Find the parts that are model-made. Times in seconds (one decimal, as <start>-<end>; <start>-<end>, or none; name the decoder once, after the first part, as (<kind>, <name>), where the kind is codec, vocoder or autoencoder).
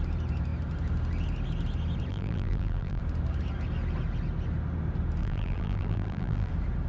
2.1-3.0 (vocoder, BigVGAN v2); 5.2-6.5